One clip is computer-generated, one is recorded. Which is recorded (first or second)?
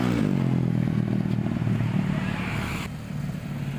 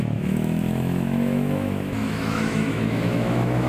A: first